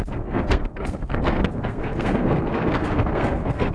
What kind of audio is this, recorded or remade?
remade